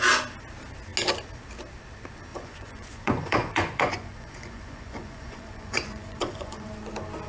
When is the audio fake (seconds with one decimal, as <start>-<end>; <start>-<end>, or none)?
2.3-6.7